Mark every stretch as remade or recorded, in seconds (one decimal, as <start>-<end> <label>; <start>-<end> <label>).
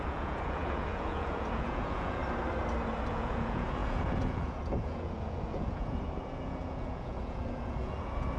0.0-2.2 remade; 2.2-3.1 recorded; 3.1-8.4 remade